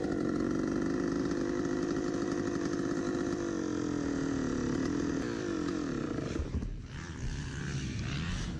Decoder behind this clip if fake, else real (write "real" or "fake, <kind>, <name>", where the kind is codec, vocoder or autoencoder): real